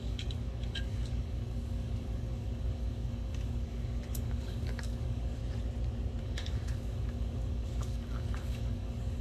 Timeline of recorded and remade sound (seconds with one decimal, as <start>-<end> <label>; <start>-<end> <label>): 0.0-5.4 remade; 5.4-6.2 recorded; 6.2-9.2 remade